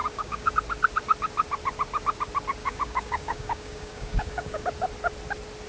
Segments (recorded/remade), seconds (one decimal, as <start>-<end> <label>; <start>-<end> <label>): 0.0-0.5 remade; 0.5-2.6 recorded; 2.6-4.6 remade; 4.6-5.7 recorded